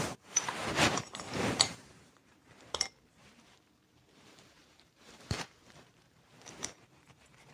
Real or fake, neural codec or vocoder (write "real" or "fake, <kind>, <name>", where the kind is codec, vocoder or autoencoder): fake, vocoder, BigVGAN v2